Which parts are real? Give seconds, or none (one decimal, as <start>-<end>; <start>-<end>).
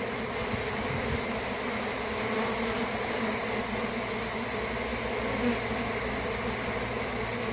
0.0-7.5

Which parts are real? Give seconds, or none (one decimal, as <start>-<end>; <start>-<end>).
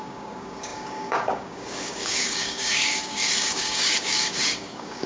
none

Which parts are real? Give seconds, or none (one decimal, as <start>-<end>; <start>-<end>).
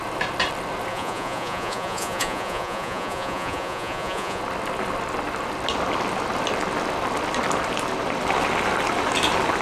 0.0-0.9; 4.4-9.6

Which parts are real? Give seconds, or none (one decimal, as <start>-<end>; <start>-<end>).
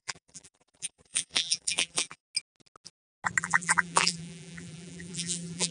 2.2-3.4